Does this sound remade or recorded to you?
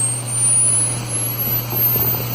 recorded